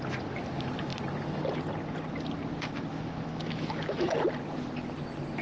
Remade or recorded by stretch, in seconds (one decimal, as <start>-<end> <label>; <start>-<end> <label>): 0.0-2.9 recorded; 2.9-4.1 remade; 4.1-5.4 recorded